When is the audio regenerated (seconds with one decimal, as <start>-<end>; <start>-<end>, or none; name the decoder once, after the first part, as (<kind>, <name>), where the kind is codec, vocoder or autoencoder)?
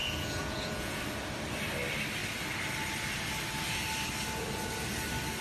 0.0-1.0 (vocoder, Vocos)